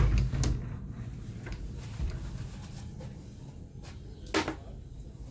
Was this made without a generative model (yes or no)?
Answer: yes